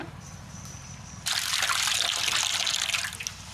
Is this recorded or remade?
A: remade